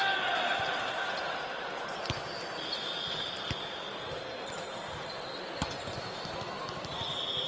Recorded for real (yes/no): yes